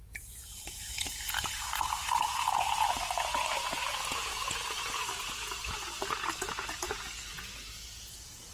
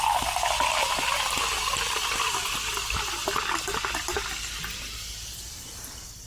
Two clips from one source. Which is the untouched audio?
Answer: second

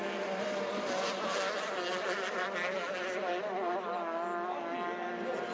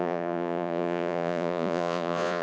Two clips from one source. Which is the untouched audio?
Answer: first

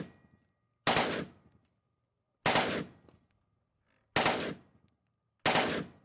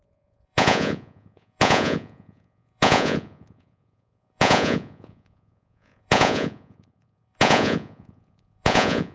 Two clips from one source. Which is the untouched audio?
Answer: first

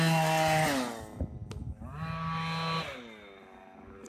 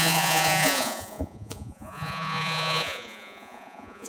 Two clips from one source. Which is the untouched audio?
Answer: first